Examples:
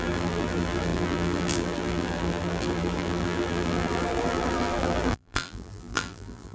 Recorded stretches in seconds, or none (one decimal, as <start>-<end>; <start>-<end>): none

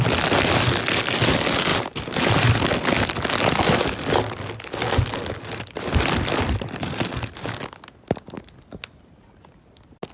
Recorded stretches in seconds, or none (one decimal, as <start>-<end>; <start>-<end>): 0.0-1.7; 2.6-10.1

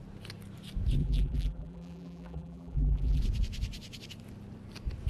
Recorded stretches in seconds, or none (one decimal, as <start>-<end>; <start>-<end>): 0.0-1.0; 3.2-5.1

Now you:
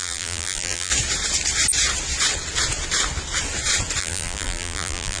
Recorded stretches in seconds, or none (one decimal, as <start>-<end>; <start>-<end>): 0.9-4.0